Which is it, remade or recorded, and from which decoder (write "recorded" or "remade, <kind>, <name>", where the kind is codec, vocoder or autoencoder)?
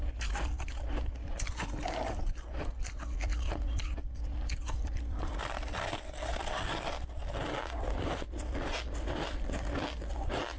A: remade, vocoder, BigVGAN v2